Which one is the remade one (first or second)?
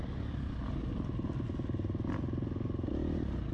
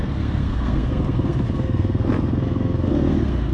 second